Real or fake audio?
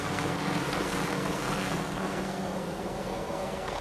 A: fake